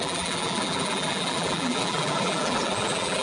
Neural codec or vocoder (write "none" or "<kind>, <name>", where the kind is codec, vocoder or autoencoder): vocoder, BigVGAN v2